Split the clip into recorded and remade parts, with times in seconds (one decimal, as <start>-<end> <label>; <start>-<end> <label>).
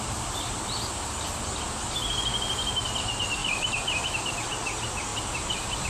0.0-3.4 recorded; 3.4-4.0 remade; 4.0-5.1 recorded; 5.1-5.9 remade